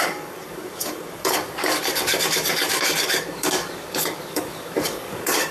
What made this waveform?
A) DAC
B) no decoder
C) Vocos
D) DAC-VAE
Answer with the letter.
A